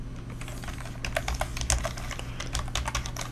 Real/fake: real